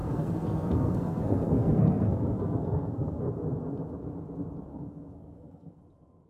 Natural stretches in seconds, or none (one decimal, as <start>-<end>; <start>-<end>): 3.2-4.7; 5.8-6.3